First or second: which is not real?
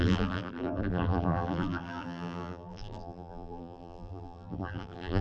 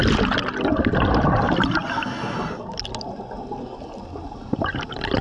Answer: first